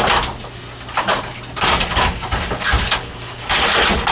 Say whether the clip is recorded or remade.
recorded